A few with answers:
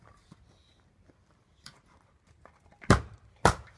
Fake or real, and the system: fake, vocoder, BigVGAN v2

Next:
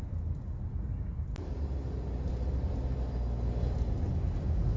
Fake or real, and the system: real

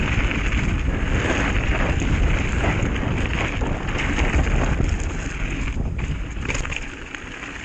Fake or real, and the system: real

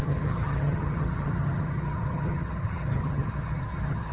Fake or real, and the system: fake, vocoder, HiFi-GAN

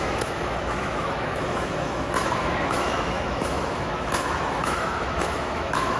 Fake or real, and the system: fake, autoencoder, DAC-VAE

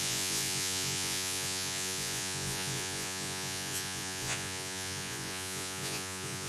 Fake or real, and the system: fake, vocoder, Vocos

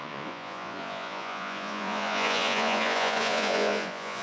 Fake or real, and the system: fake, vocoder, Vocos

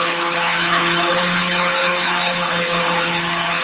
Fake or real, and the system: fake, codec, HILCodec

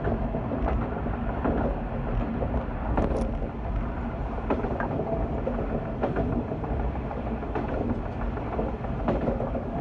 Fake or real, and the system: real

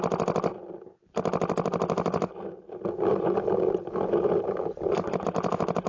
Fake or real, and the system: real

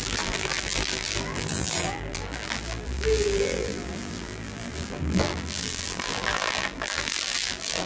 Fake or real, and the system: fake, vocoder, BigVGAN v2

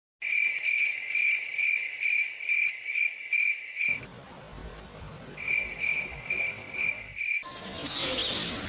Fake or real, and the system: real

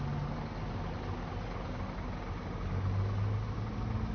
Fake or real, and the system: real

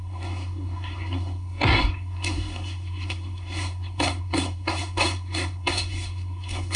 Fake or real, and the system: fake, codec, SNAC